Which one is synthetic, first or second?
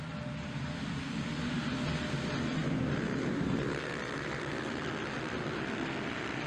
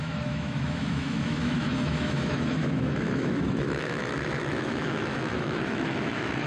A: second